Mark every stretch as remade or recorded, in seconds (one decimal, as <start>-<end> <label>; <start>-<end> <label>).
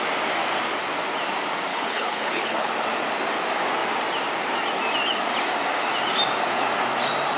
0.0-1.7 recorded; 1.7-2.7 remade; 2.7-7.4 recorded